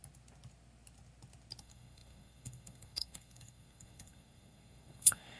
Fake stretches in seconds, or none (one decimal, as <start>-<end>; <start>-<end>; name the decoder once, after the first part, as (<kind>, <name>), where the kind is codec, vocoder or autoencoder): 1.6-5.4 (codec, SNAC)